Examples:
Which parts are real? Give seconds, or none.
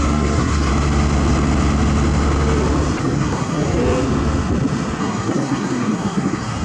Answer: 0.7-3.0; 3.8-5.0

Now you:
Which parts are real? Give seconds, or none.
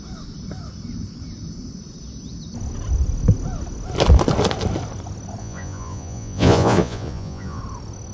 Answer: 0.0-5.4; 7.6-8.1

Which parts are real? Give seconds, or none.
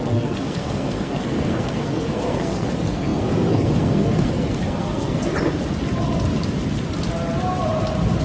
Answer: 5.3-8.2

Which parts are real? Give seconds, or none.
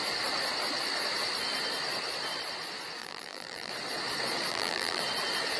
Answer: 0.0-3.0; 3.7-4.5; 5.0-5.6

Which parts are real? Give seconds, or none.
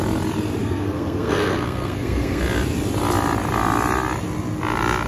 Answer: 0.0-0.6; 2.4-5.1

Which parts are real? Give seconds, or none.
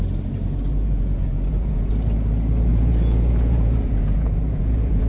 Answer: 0.0-0.7; 1.9-2.7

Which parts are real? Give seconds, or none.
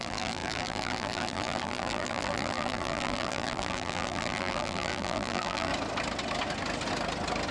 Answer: 5.7-7.5